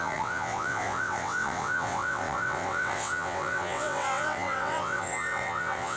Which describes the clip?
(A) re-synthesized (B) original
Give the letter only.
A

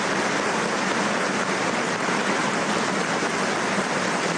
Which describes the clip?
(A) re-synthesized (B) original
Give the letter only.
B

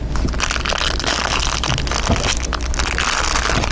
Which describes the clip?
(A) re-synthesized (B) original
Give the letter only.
B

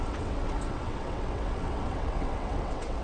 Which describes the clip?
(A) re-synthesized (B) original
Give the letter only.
A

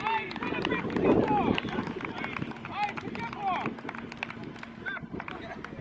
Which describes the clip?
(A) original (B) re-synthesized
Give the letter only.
A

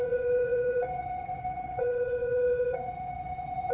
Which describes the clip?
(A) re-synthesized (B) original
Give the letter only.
A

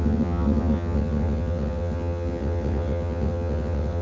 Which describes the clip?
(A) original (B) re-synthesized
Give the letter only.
B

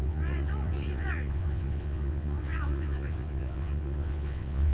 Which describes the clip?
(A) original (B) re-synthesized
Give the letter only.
B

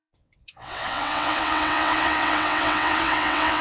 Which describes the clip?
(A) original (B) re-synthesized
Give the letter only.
B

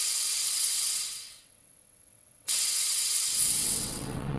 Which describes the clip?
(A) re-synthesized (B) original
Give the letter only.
A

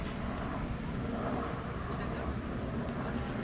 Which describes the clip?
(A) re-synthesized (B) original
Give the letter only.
B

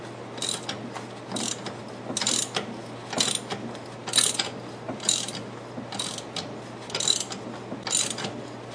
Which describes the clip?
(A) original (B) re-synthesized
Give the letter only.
A